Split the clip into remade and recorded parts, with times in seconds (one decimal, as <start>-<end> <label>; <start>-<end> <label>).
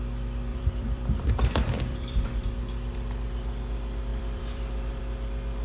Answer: 0.0-0.5 recorded; 0.5-2.2 remade; 2.2-4.1 recorded; 4.1-5.0 remade; 5.0-5.6 recorded